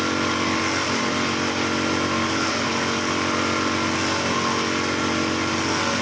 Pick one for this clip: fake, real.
real